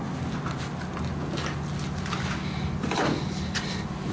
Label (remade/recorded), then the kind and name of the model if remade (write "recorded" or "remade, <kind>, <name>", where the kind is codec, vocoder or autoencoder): recorded